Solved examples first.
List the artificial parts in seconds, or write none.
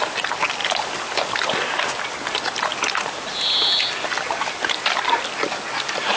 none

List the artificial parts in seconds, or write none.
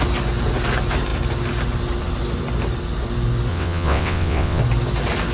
3.5-4.6 (vocoder, WaveNeXt)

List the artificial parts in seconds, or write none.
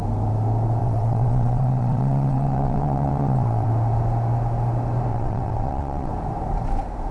0.8-3.7 (vocoder, WaveNeXt); 5.1-6.1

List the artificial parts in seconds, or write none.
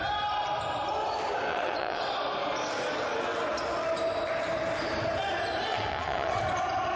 1.5-2.1 (vocoder, WaveNeXt); 5.7-6.4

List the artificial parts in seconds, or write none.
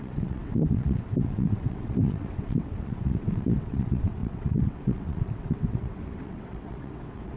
0.0-7.4 (vocoder, WaveNeXt)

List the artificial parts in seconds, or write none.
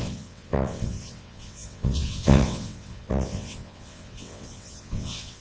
0.0-5.4 (vocoder, WaveNeXt)